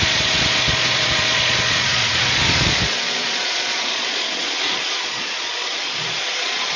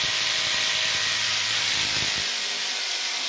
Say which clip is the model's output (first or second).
first